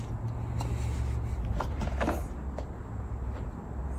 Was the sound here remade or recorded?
recorded